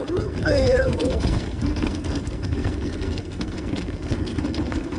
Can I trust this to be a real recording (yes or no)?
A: no